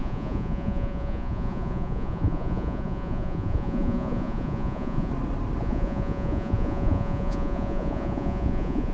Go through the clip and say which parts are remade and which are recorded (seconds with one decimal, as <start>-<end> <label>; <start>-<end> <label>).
0.0-5.1 remade; 5.1-5.6 recorded; 5.6-8.9 remade